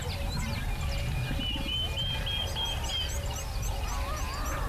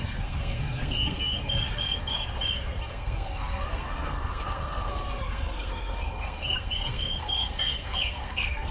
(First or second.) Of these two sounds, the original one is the first